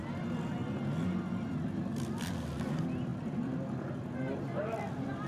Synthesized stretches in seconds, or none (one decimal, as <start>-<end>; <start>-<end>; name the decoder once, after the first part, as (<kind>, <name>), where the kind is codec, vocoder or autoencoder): 0.0-0.6 (vocoder, BigVGAN v2); 1.2-5.3